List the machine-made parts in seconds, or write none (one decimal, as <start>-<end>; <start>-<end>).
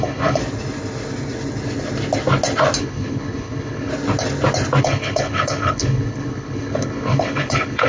0.0-0.4; 2.8-3.9; 4.8-7.9